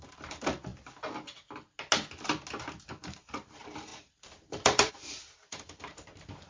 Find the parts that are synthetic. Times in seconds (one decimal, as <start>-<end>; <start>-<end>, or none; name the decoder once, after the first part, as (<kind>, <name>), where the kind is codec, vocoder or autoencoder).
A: 0.0-0.7 (vocoder, BigVGAN v2); 2.9-6.5